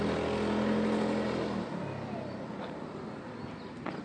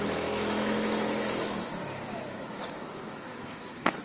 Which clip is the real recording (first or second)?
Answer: first